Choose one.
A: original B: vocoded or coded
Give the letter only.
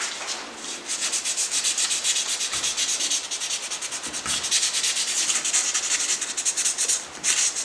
A